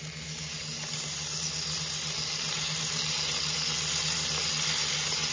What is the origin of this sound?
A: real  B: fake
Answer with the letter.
A